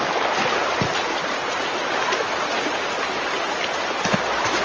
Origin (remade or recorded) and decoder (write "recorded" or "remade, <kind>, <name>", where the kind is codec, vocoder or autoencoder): recorded